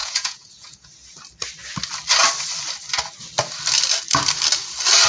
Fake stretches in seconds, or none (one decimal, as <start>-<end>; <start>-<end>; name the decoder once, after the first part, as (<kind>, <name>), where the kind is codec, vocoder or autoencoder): 0.0-0.9 (vocoder, Vocos)